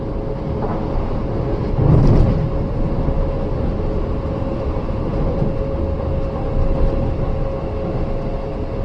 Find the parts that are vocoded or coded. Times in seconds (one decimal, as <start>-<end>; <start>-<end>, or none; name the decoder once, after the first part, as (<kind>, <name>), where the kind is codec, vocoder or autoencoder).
none